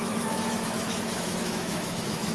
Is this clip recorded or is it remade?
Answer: remade